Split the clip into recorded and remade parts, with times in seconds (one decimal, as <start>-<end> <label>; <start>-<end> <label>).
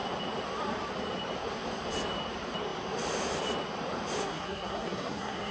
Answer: 0.0-4.2 recorded; 4.2-5.5 remade